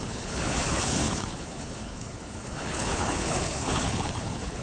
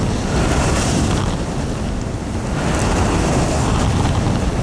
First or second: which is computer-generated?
first